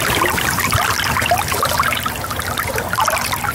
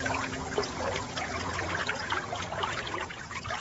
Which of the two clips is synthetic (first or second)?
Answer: second